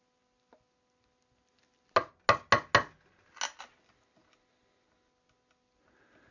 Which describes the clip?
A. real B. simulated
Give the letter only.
A